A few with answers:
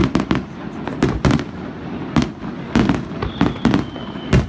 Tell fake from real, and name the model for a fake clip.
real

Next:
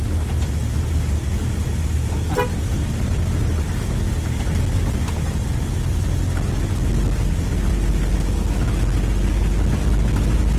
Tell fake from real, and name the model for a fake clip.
real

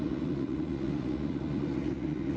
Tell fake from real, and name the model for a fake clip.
fake, vocoder, Vocos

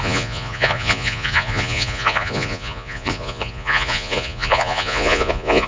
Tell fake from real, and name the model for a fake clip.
fake, vocoder, Vocos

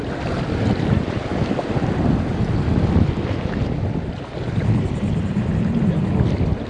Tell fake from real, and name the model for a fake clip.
real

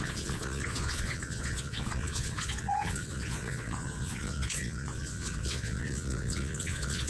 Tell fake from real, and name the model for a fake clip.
fake, vocoder, Vocos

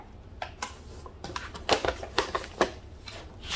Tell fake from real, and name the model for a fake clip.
real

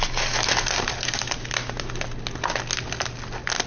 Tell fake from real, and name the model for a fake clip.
real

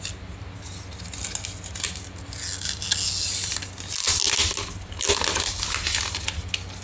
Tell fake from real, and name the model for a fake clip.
real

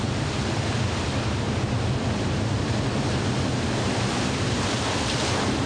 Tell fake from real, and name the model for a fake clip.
real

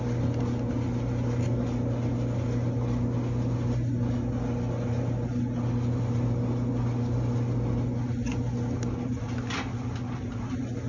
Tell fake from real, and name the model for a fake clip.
real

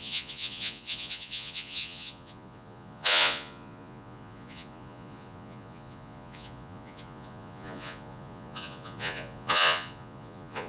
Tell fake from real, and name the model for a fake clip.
fake, vocoder, Vocos